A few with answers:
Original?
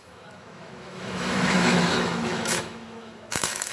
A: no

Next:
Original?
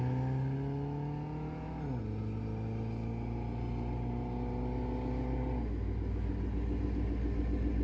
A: yes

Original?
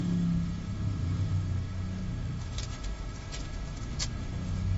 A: no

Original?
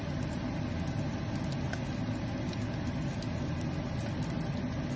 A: yes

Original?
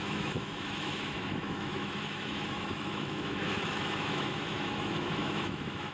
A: no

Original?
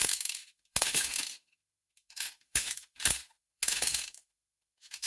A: no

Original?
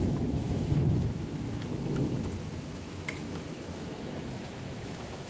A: no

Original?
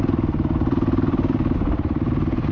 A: yes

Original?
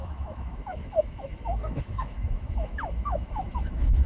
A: no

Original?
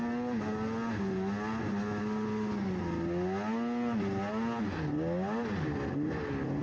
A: yes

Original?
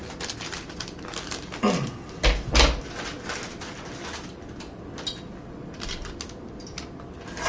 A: yes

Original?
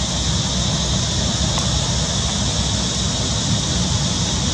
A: yes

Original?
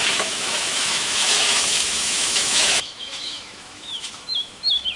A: no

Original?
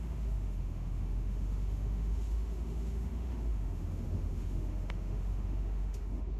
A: no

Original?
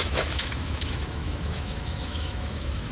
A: no